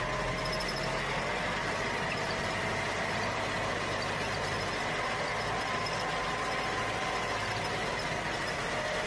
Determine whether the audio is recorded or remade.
recorded